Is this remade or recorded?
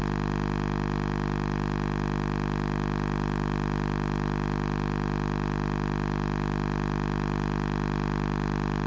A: recorded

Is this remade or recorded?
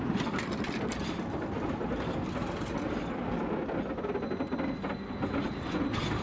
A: recorded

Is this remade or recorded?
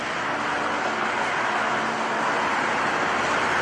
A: recorded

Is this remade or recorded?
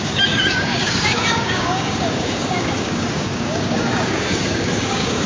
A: remade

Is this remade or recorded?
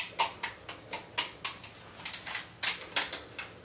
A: recorded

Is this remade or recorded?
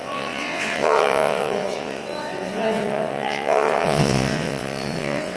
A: remade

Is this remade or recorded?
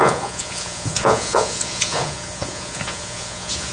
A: remade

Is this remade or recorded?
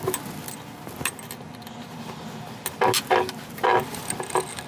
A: recorded